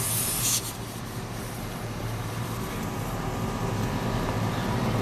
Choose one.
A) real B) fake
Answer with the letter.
B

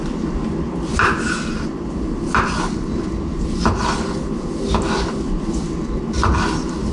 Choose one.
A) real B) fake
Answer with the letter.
A